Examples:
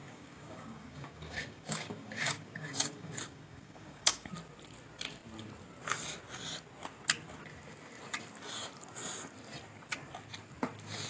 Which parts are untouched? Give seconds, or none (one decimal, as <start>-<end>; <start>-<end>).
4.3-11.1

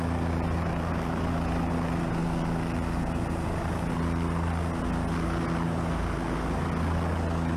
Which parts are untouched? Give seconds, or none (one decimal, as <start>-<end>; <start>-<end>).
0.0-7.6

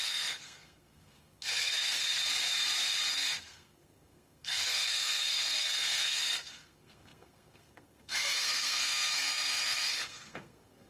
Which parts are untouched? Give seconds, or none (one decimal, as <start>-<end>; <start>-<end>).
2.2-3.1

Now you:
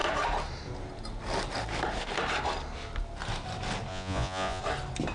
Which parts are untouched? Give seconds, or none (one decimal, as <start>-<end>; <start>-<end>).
0.0-3.9; 4.6-5.1